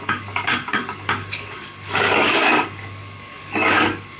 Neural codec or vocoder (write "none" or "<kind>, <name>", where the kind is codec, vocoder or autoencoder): codec, DAC